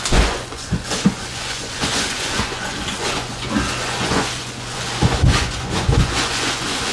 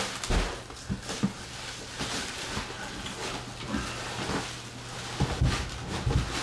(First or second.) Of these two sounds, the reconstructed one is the first